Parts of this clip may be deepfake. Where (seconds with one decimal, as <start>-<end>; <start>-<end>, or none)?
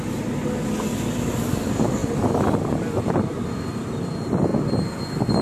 none